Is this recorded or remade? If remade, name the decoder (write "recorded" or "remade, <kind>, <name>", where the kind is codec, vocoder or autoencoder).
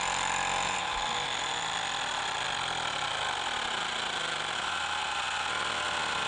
recorded